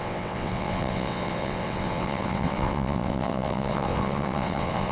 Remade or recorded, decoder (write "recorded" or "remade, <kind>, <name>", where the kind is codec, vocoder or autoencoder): remade, vocoder, WaveNeXt